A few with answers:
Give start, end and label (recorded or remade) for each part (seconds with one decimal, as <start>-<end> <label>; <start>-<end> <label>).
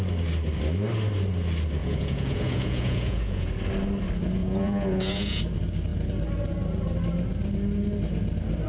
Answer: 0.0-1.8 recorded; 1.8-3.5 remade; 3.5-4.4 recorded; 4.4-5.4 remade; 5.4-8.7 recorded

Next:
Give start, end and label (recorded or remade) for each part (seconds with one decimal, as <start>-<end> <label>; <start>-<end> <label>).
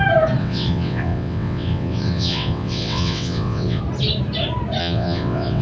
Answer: 0.0-0.4 recorded; 0.4-3.8 remade; 3.8-4.8 recorded; 4.8-5.6 remade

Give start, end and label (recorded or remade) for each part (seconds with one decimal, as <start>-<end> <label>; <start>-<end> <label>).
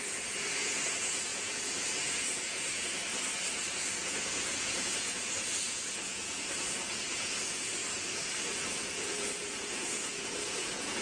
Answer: 0.0-3.0 remade; 3.0-4.0 recorded; 4.0-7.8 remade; 7.8-8.4 recorded; 8.4-11.0 remade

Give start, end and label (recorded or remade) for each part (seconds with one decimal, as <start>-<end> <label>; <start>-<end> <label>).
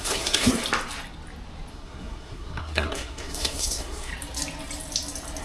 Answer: 0.0-0.6 remade; 0.6-1.7 recorded; 1.7-4.1 remade; 4.1-5.4 recorded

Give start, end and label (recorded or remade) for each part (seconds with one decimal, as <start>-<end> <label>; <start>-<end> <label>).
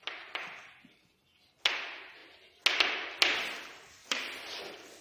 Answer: 0.0-4.0 recorded; 4.0-4.6 remade; 4.6-5.0 recorded